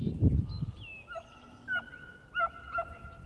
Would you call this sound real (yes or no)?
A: yes